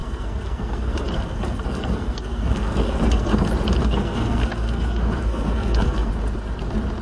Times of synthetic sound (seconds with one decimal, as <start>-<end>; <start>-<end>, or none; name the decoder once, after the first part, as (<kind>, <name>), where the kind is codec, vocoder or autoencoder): 0.0-3.4 (codec, SNAC); 3.8-6.1